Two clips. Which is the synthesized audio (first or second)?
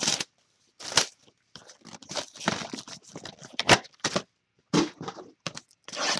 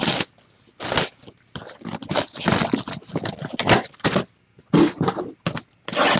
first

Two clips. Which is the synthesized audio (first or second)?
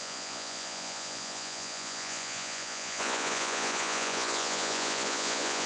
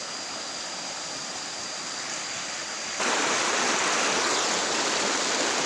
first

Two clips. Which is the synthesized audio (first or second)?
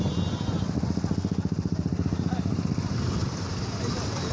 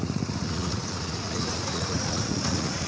second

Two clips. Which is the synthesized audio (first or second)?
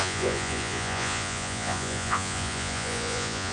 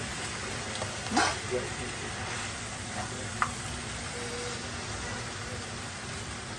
first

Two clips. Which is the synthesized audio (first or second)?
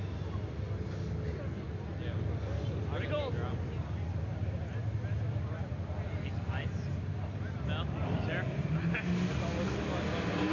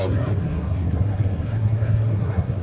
second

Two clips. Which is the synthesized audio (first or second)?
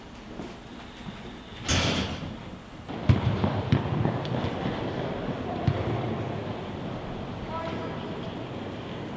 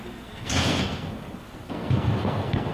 second